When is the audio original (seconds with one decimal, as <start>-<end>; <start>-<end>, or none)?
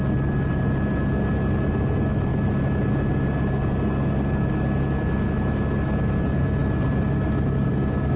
0.0-8.2